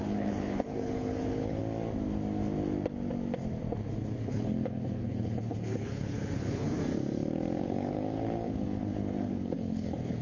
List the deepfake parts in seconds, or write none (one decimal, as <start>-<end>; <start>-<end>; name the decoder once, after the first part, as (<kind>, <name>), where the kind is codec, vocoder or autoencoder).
0.0-1.6 (codec, HILCodec); 4.2-6.8; 7.6-10.2